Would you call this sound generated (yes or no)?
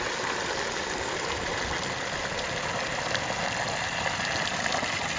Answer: no